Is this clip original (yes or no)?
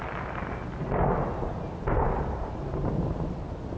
yes